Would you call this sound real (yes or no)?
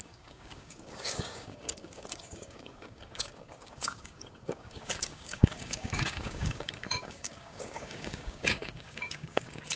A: no